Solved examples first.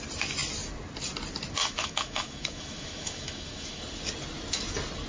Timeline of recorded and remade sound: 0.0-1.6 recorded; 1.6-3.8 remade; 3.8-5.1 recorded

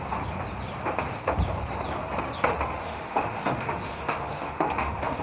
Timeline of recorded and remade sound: 0.0-2.8 recorded; 2.8-5.2 remade